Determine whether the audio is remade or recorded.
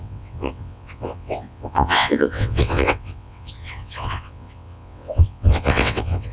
remade